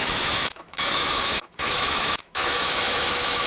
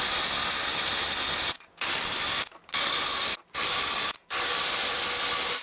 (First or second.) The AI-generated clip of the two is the first